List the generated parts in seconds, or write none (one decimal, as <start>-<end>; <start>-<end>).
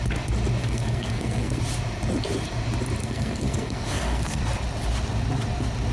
0.6-1.6; 3.0-4.4